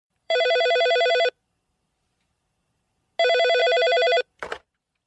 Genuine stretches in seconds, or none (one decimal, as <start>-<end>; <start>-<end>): 1.1-3.6